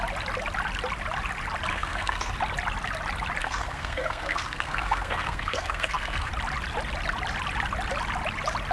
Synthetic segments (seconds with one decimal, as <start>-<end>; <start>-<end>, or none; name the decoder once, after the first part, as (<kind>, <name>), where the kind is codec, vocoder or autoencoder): 1.7-2.3 (codec, SNAC); 3.4-6.3